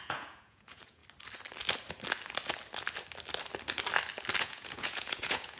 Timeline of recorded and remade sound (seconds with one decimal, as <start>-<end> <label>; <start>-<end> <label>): 0.0-1.0 remade; 1.0-4.4 recorded; 4.4-5.6 remade